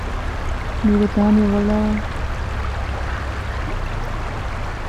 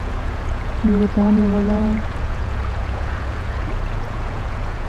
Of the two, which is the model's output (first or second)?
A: second